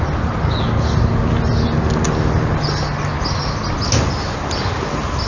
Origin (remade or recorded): recorded